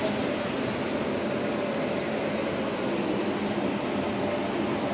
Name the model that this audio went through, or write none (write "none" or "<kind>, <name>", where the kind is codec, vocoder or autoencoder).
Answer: none